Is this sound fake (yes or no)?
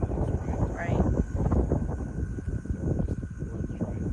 no